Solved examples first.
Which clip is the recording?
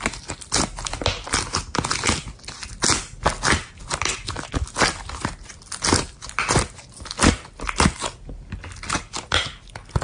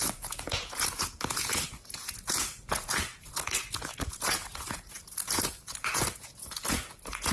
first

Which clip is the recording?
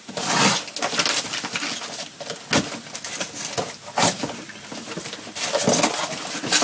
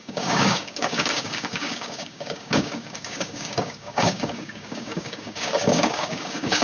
first